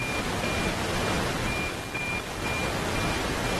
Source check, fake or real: real